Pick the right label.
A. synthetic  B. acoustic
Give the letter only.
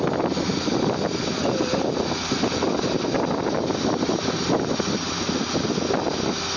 B